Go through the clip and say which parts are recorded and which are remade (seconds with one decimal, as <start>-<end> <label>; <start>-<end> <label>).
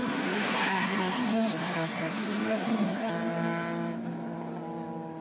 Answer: 0.0-3.1 remade; 3.1-5.2 recorded